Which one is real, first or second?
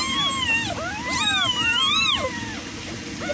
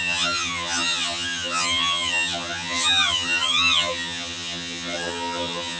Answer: first